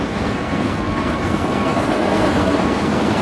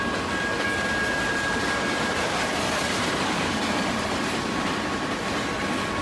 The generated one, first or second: first